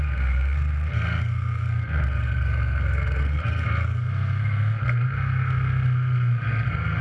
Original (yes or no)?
no